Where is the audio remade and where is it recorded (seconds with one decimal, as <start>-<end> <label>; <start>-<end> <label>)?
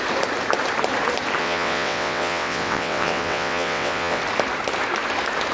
0.0-1.4 recorded; 1.4-4.2 remade; 4.2-5.5 recorded